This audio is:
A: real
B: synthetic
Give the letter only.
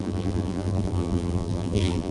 B